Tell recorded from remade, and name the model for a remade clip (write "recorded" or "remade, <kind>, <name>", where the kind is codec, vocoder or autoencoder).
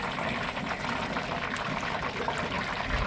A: recorded